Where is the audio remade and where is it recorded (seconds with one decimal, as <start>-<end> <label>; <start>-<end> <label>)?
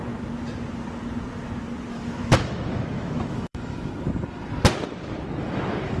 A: 0.0-1.9 recorded; 1.9-3.9 remade; 3.9-5.4 recorded; 5.4-6.0 remade